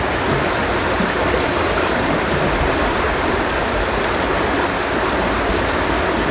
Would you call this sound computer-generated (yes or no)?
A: no